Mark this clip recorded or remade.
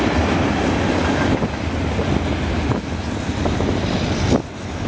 recorded